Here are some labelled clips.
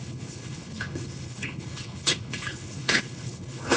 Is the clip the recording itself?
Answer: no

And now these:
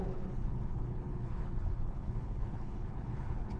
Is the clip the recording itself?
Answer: no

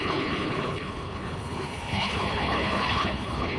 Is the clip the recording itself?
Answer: no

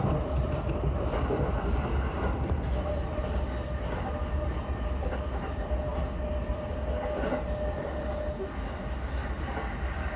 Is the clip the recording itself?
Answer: yes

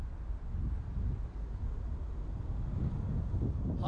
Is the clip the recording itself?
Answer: yes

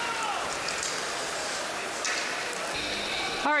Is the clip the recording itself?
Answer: yes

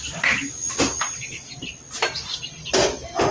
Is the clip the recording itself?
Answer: yes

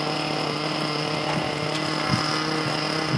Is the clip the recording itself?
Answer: yes